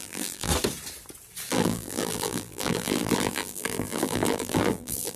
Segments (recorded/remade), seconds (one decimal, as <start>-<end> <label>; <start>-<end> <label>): 0.0-0.5 remade; 0.5-1.5 recorded; 1.5-5.2 remade